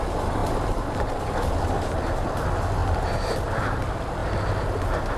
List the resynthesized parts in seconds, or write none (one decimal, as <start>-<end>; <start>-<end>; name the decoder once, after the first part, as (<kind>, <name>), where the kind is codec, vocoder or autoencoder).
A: none